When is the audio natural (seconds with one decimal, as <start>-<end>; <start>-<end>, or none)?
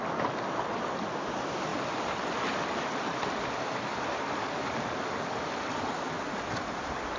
0.0-7.2